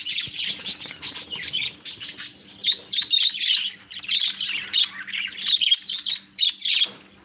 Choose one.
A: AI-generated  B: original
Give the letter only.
B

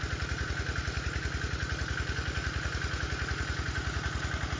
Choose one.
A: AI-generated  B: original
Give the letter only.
B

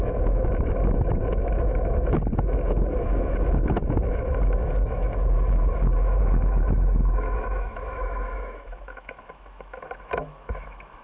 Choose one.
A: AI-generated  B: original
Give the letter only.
A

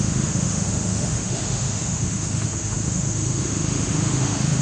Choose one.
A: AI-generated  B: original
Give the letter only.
A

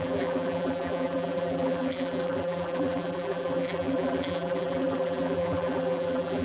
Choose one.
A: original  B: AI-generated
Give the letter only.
B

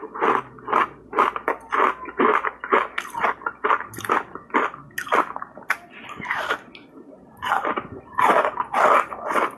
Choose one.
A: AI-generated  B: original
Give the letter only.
B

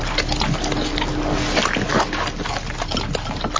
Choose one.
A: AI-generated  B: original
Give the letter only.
B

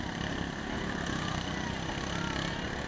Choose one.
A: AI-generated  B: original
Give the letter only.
B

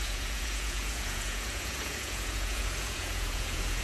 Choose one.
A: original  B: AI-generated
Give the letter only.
B